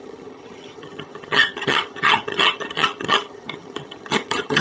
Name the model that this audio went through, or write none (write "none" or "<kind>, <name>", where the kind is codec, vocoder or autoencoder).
vocoder, HiFi-GAN